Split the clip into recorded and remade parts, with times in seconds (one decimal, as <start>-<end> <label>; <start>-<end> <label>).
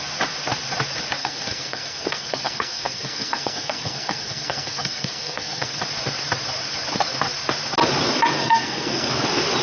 0.0-1.2 recorded; 1.2-5.8 remade; 5.8-8.4 recorded; 8.4-9.1 remade; 9.1-9.6 recorded